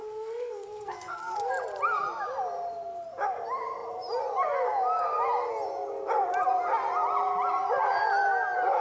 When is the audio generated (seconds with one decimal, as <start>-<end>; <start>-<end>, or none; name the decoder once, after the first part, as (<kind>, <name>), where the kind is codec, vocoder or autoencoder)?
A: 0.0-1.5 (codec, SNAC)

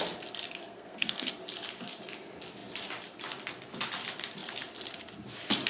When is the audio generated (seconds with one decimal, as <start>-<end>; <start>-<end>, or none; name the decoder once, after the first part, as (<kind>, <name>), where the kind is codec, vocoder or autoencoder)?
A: 0.7-1.3 (codec, SNAC)

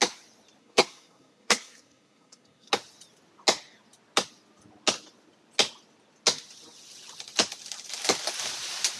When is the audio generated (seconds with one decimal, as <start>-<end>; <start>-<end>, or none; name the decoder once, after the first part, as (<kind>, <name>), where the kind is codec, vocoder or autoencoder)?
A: 0.6-2.7 (codec, SNAC)

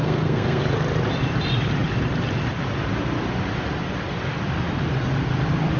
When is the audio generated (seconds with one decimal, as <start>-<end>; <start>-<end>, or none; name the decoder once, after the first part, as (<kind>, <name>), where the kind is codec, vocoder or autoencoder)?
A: 0.0-0.6 (codec, SNAC)

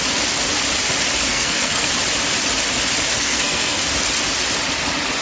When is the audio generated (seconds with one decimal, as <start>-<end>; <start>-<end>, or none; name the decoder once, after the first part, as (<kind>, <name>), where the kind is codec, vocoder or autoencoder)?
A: 1.3-1.9 (codec, SNAC); 3.1-3.8